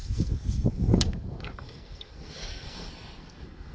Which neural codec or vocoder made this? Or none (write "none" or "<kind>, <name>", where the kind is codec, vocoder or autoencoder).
codec, SNAC